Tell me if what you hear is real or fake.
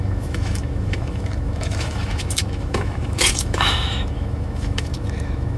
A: fake